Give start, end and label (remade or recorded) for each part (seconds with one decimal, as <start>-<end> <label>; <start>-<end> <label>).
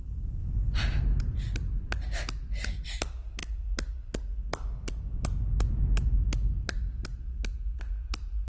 0.0-8.5 recorded